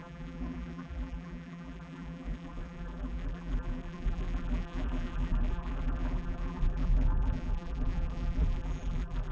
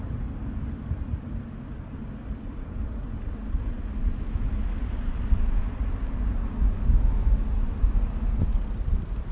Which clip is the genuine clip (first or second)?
second